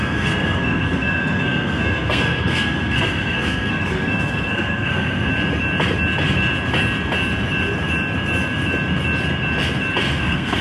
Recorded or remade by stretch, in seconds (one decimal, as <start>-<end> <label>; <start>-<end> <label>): 0.0-5.3 remade; 5.3-10.2 recorded; 10.2-10.6 remade